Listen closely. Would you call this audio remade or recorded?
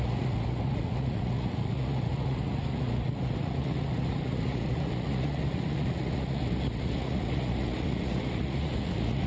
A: remade